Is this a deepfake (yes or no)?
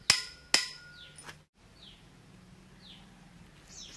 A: no